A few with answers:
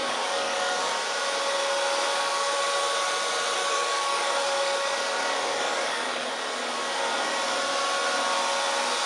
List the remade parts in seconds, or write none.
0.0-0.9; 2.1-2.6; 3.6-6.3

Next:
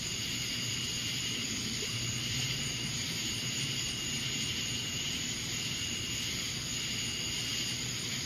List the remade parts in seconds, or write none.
0.0-6.7; 7.6-8.3

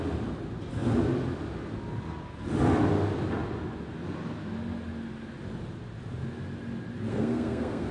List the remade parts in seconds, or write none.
7.1-7.9